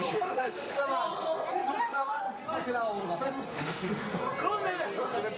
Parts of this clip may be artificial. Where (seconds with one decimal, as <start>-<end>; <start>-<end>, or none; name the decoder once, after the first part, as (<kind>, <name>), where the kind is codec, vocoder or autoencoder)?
0.0-0.8 (autoencoder, DAC-VAE); 1.8-2.4; 3.5-4.2